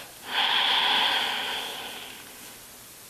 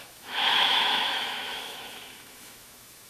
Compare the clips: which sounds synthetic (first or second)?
second